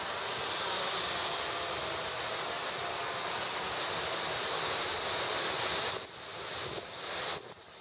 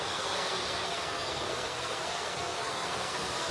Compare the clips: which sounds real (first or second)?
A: first